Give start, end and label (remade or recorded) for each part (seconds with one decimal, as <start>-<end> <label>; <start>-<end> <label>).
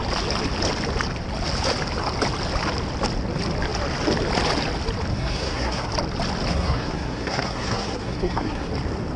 0.0-5.1 recorded; 5.1-5.9 remade; 5.9-6.5 recorded; 6.5-8.7 remade; 8.7-9.2 recorded